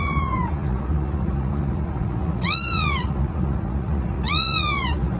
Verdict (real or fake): fake